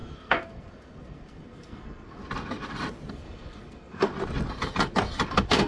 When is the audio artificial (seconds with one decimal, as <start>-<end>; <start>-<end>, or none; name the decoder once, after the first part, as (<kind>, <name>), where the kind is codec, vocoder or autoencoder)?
0.0-2.2 (codec, SNAC); 3.1-4.1; 5.3-5.7